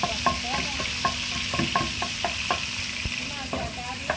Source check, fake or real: real